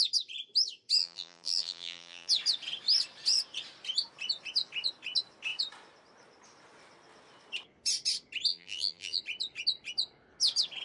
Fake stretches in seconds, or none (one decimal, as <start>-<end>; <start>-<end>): 1.0-2.3; 8.5-9.2